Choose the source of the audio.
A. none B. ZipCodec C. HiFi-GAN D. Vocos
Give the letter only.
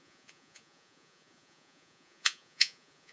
D